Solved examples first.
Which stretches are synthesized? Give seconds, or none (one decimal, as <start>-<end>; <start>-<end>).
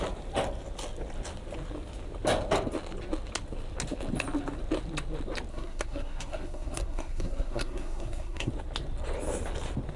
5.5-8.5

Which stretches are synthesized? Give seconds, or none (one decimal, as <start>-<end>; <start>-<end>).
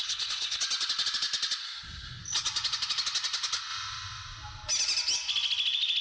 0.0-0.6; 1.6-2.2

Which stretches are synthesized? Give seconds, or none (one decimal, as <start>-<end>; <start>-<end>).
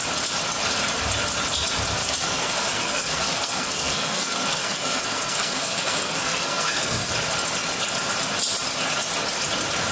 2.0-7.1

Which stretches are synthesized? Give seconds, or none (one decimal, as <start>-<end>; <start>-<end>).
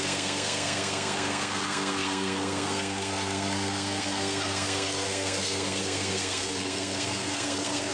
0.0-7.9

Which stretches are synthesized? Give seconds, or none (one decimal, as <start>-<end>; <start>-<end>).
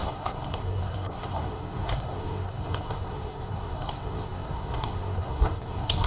0.0-6.1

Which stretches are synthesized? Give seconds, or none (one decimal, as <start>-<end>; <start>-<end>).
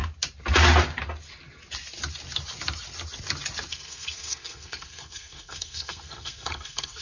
3.7-7.0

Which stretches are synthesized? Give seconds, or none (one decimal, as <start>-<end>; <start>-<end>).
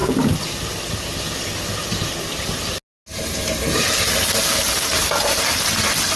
none